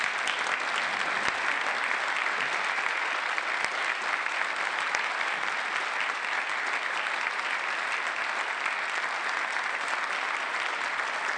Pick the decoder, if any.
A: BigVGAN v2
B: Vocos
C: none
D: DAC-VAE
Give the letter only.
C